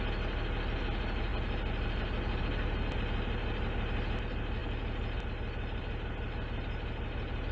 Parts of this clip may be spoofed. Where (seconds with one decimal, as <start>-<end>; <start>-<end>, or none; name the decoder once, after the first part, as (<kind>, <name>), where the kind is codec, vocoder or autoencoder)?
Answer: none